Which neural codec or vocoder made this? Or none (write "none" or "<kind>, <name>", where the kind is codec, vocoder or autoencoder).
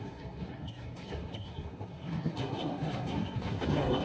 codec, SNAC